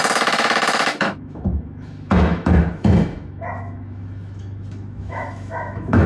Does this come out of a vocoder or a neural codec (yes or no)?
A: yes